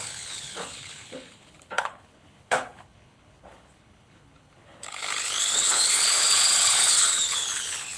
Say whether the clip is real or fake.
fake